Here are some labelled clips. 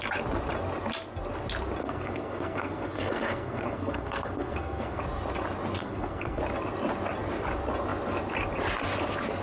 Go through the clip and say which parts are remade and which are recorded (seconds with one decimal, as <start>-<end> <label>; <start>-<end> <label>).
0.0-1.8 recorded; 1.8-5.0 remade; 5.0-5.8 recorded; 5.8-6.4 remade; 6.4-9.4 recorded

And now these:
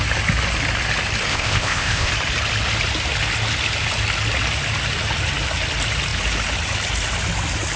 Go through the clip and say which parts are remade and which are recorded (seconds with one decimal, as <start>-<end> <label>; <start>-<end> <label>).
0.0-1.3 recorded; 1.3-2.1 remade; 2.1-7.8 recorded

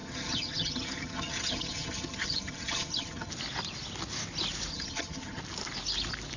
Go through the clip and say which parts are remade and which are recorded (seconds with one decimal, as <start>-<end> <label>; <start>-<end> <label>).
0.0-3.3 remade; 3.3-4.7 recorded; 4.7-5.4 remade; 5.4-6.4 recorded